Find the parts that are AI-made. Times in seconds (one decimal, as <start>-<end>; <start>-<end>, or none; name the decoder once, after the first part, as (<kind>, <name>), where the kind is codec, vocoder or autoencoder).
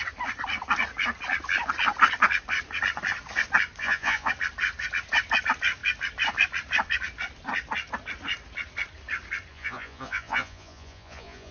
3.8-4.3 (vocoder, Vocos); 9.5-11.5